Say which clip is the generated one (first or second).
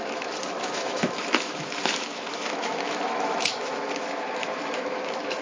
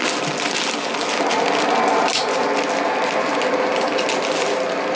first